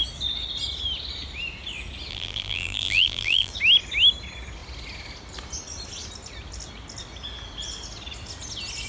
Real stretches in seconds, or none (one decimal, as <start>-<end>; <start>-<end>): 0.0-2.1; 3.5-8.9